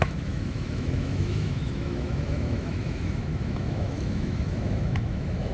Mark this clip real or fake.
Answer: fake